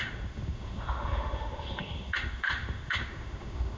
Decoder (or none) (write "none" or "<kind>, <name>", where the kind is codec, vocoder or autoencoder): autoencoder, DAC-VAE